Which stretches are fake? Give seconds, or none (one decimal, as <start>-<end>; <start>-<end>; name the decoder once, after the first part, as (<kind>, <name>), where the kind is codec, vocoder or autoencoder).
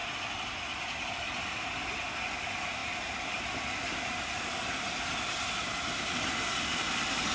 none